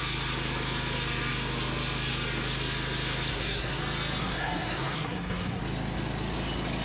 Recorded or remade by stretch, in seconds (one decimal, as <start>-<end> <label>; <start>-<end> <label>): 0.0-3.3 recorded; 3.3-3.8 remade; 3.8-4.2 recorded; 4.2-5.6 remade; 5.6-6.8 recorded